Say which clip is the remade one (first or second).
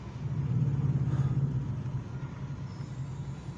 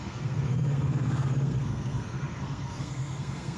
second